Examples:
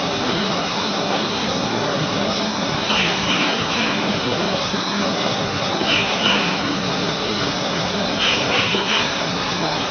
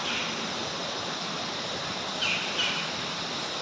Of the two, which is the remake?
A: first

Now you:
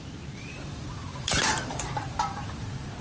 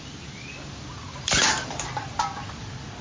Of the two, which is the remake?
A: first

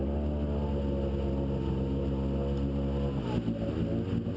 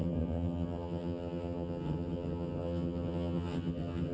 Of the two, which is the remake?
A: second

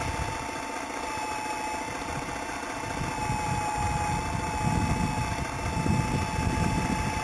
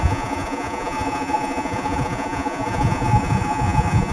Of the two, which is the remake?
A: second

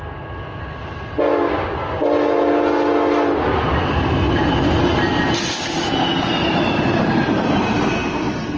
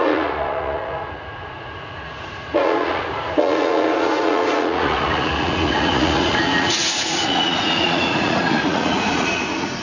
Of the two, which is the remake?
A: second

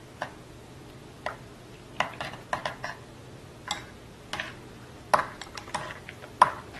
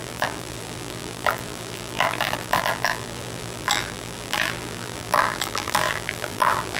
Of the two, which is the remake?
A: second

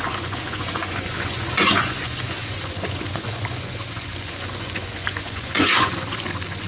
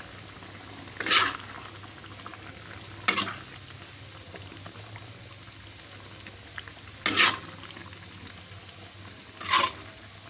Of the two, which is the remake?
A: first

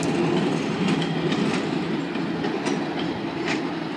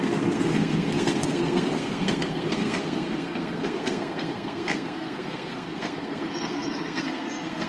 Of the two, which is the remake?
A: second